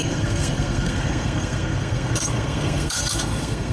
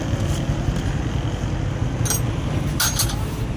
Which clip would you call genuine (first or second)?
second